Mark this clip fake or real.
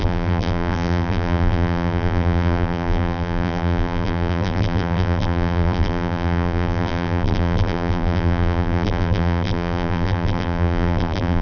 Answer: fake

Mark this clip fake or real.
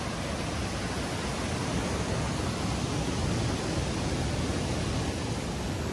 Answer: real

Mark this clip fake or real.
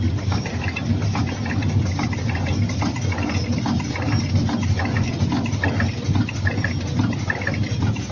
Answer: real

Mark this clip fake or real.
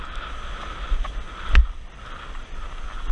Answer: real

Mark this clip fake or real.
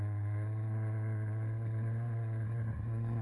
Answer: fake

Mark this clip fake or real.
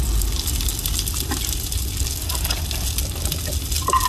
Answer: real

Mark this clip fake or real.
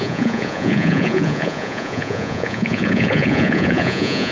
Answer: fake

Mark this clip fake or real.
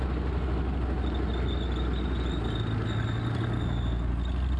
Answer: real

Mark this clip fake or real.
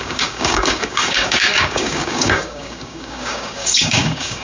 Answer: fake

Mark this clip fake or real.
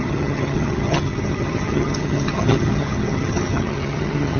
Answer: fake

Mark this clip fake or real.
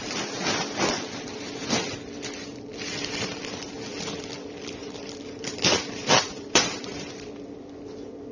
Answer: fake